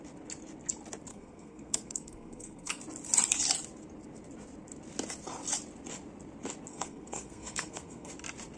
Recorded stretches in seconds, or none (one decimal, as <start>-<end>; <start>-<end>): 0.0-1.1; 2.8-6.7; 8.1-8.6